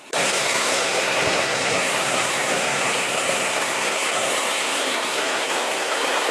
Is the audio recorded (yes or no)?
no